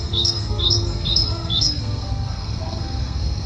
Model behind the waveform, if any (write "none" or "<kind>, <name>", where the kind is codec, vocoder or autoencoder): codec, SNAC